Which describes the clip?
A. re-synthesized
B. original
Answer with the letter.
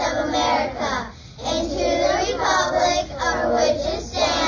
B